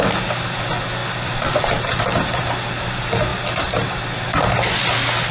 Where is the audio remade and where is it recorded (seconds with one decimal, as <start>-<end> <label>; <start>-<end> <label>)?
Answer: 0.0-1.0 recorded; 1.0-2.9 remade; 2.9-5.3 recorded